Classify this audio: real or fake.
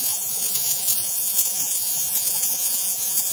fake